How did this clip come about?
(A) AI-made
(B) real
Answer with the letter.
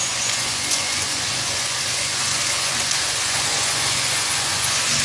A